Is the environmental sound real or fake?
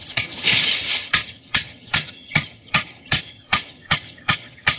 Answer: fake